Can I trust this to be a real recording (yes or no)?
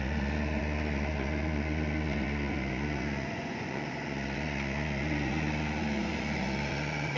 no